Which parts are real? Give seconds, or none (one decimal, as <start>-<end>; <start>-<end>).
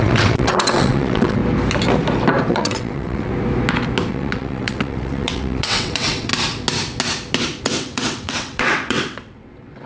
1.4-2.5; 3.3-4.1; 6.3-7.6